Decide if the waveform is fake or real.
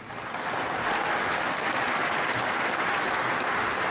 real